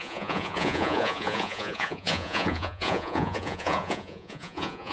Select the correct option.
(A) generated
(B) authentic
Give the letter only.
A